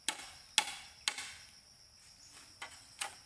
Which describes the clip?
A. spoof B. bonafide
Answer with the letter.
B